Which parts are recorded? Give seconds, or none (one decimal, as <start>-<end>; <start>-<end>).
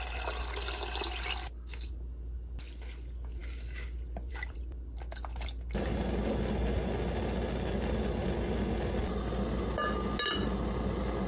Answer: 0.0-11.3